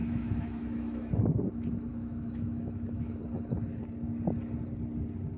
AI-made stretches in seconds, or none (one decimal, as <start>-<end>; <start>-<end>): 0.0-1.2; 1.9-3.2